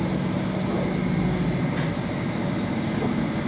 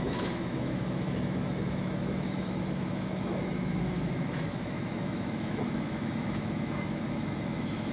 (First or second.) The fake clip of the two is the second